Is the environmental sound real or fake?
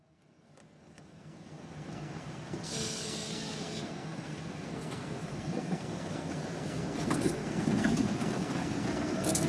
fake